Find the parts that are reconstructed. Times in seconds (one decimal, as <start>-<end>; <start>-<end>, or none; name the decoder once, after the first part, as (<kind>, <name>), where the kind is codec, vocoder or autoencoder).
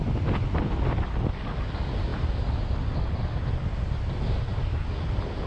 4.5-5.0 (codec, DAC)